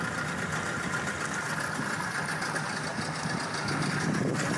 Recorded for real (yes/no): yes